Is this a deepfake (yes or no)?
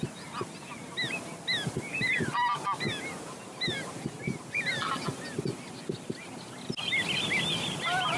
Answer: no